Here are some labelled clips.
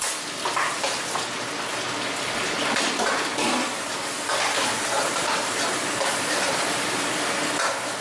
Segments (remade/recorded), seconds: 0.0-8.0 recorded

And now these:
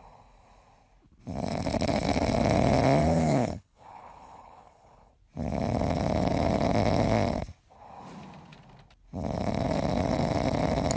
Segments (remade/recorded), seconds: 0.0-3.0 recorded; 3.0-5.1 remade; 5.1-11.0 recorded

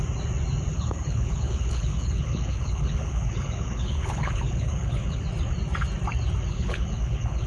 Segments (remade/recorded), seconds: 0.0-0.7 recorded; 0.7-5.2 remade; 5.2-6.5 recorded; 6.5-7.5 remade

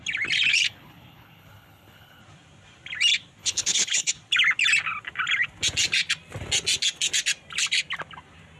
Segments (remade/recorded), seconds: 0.0-0.5 recorded; 0.5-2.2 remade; 2.2-3.4 recorded; 3.4-4.1 remade; 4.1-8.6 recorded